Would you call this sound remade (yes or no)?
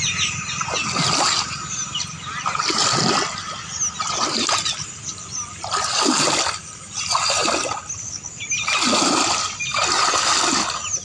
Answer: no